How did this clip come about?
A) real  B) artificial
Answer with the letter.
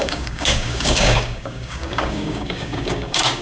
B